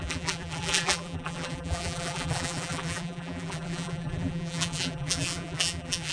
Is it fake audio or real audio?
fake